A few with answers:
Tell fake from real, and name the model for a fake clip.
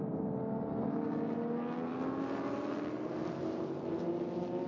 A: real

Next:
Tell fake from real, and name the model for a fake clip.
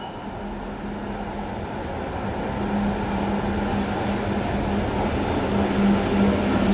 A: real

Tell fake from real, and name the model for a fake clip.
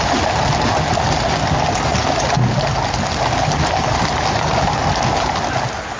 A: real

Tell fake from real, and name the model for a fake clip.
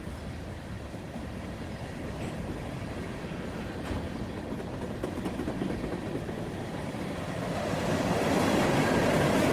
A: real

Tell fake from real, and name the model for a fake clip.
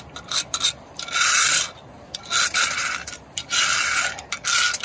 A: real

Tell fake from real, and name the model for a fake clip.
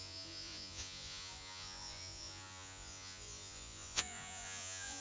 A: fake, vocoder, Vocos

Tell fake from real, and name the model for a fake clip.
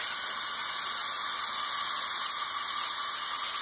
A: real